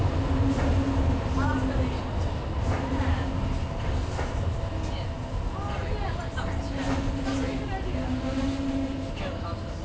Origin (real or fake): real